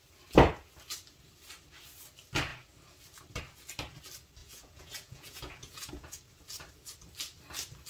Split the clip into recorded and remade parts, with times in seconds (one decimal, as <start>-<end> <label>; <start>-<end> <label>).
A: 0.0-4.4 recorded; 4.4-6.2 remade; 6.2-7.9 recorded